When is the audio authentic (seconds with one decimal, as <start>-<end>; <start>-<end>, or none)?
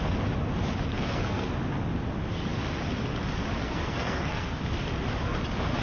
0.0-0.9; 1.5-3.6; 4.6-5.8